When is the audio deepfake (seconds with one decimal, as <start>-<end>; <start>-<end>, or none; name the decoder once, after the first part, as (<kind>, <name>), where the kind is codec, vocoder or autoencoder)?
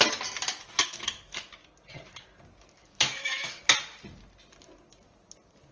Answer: 0.8-1.5 (autoencoder, DAC-VAE); 2.8-3.6